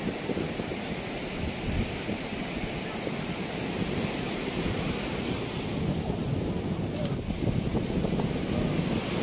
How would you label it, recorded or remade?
recorded